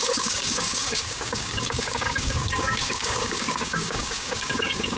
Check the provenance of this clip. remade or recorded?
remade